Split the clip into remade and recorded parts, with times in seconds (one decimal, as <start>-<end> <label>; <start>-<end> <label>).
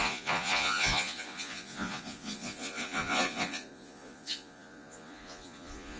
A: 0.0-6.0 remade